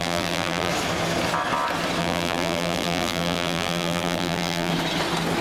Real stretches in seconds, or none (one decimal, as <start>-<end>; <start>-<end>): 0.7-2.0; 4.7-5.4